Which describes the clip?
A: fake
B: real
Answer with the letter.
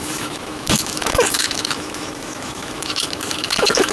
A